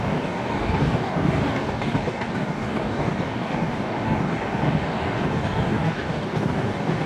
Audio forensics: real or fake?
fake